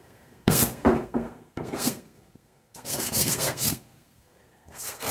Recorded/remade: remade